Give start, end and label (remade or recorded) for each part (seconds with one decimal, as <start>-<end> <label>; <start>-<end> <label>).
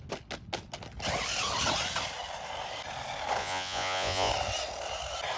0.0-3.4 recorded; 3.4-4.3 remade; 4.3-5.4 recorded